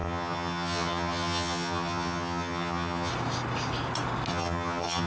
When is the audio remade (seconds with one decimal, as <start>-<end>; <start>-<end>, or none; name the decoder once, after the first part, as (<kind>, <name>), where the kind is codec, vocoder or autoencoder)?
0.0-3.1 (vocoder, HiFi-GAN); 4.3-5.1